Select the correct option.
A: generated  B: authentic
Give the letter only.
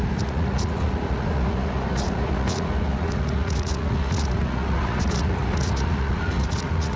A